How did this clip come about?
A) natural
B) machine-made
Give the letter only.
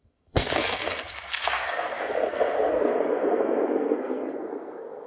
B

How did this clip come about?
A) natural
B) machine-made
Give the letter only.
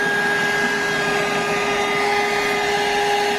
A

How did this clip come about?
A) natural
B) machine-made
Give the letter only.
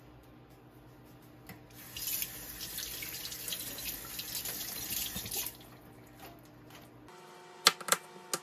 A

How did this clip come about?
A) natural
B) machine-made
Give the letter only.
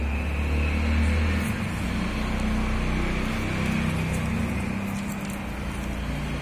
A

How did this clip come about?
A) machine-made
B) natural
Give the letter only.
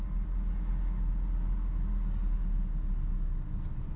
B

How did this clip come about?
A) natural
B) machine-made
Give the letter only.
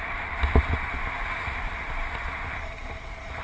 A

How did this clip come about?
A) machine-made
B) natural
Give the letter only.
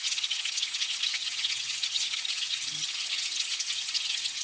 A